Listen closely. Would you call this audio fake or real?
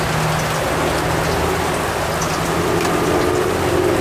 real